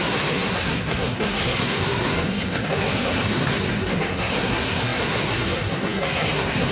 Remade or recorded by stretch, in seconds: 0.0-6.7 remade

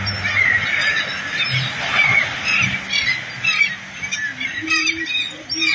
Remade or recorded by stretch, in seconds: 0.0-5.7 recorded

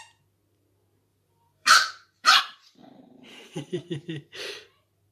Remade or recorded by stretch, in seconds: 0.0-1.1 recorded; 1.1-2.4 remade; 2.4-5.1 recorded

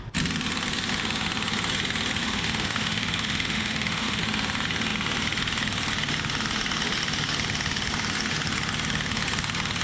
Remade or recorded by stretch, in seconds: 0.0-2.2 recorded; 2.2-4.2 remade; 4.2-9.8 recorded

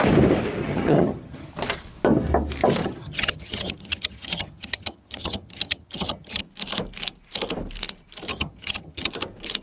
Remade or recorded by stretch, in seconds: 0.0-0.6 recorded; 0.6-1.5 remade; 1.5-2.8 recorded; 2.8-6.4 remade; 6.4-8.3 recorded; 8.3-9.1 remade; 9.1-9.6 recorded

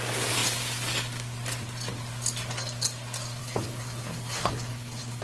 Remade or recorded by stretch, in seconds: 0.0-3.4 recorded; 3.4-5.2 remade